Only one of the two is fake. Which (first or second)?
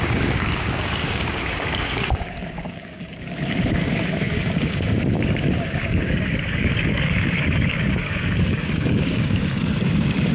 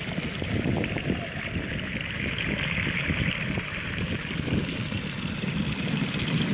first